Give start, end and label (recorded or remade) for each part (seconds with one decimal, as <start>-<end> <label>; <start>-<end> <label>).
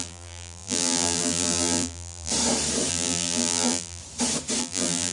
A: 0.0-2.3 remade; 2.3-2.9 recorded; 2.9-4.0 remade; 4.0-4.6 recorded; 4.6-5.1 remade